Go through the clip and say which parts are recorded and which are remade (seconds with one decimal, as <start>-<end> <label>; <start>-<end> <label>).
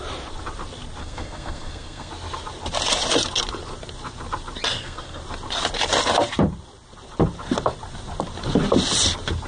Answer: 0.0-1.0 recorded; 1.0-2.1 remade; 2.1-4.7 recorded; 4.7-5.2 remade; 5.2-9.5 recorded